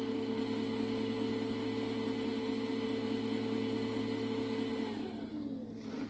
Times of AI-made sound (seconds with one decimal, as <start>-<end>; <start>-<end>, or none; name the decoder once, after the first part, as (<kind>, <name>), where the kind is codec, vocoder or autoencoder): none